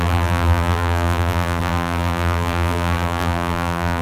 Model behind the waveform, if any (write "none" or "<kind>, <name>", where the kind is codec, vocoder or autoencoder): vocoder, BigVGAN v2